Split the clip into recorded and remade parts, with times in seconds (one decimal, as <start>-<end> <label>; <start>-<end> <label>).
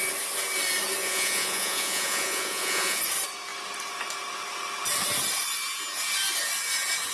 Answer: 0.0-1.0 recorded; 1.0-3.0 remade; 3.0-7.1 recorded